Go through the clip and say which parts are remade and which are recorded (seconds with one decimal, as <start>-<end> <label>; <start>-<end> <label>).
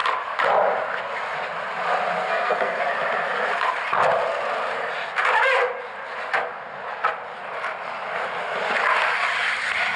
0.0-2.2 recorded; 2.2-2.8 remade; 2.8-10.0 recorded